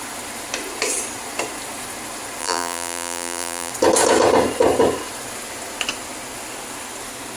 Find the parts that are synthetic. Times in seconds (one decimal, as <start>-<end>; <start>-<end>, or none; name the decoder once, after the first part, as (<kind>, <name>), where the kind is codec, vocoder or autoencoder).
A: 2.4-3.7 (vocoder, BigVGAN v2)